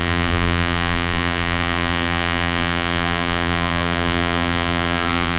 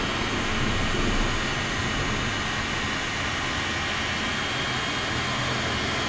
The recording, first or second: second